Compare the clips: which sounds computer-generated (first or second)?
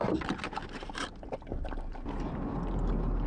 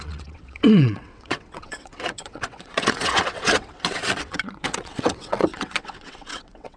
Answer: second